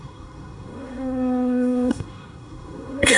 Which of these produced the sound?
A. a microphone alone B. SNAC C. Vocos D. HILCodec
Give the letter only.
B